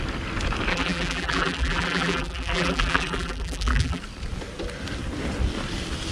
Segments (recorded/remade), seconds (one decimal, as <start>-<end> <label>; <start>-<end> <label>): 0.0-0.7 recorded; 0.7-4.0 remade; 4.0-6.1 recorded